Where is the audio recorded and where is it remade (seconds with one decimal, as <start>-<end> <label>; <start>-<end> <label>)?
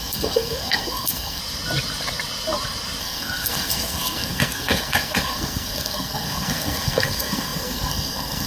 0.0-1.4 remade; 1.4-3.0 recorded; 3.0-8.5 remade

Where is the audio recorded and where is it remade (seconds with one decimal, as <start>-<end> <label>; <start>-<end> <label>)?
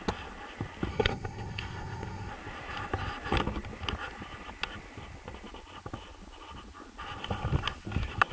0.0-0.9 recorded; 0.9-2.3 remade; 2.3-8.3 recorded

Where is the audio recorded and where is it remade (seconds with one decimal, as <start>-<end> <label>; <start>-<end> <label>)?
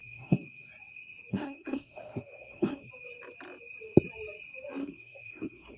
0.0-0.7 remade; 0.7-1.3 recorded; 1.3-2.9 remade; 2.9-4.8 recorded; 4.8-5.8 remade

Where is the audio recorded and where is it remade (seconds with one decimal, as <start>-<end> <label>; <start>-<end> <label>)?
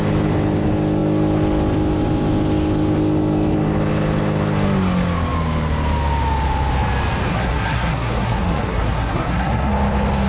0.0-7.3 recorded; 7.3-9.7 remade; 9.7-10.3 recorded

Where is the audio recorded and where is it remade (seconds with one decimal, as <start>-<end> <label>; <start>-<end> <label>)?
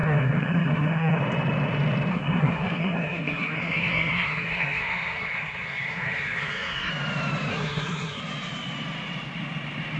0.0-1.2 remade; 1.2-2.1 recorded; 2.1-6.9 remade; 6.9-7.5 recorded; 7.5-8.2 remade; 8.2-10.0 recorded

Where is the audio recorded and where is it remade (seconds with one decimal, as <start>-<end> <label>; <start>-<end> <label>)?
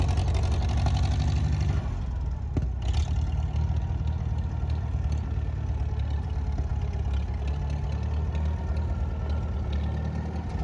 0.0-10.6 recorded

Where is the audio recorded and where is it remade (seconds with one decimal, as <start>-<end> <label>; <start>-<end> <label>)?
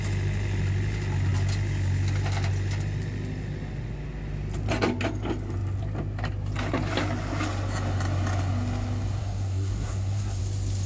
0.0-9.2 recorded; 9.2-10.4 remade; 10.4-10.9 recorded